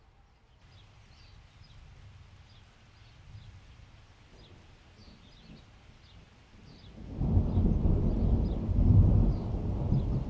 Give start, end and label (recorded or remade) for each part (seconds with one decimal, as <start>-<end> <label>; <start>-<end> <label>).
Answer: 0.0-10.3 recorded